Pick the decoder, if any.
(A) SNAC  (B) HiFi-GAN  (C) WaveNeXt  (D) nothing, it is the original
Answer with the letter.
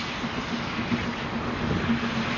D